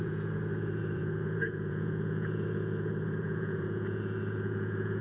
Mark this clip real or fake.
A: fake